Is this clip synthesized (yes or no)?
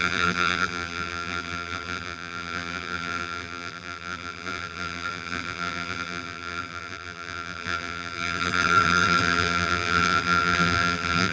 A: yes